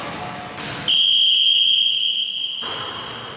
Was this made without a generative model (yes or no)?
yes